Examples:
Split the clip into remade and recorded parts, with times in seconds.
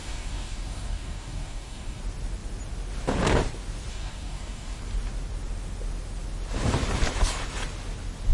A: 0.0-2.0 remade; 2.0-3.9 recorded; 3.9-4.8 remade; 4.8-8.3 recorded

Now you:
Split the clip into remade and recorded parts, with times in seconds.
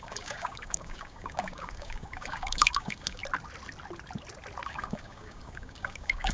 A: 0.0-3.2 remade; 3.2-4.7 recorded; 4.7-6.3 remade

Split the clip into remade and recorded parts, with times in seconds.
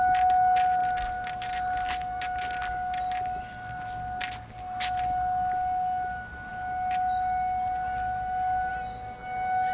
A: 0.0-9.7 recorded